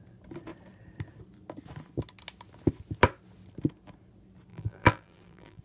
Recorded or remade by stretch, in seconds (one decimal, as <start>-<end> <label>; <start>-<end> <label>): 0.0-4.5 recorded; 4.5-5.6 remade

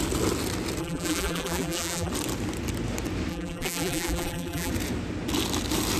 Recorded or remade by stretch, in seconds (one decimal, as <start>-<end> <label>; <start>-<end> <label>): 0.0-0.8 recorded; 0.8-2.1 remade; 2.1-3.3 recorded; 3.3-4.7 remade; 4.7-6.0 recorded